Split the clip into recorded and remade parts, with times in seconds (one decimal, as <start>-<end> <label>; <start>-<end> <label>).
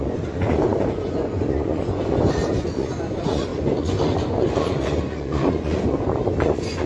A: 0.0-6.9 remade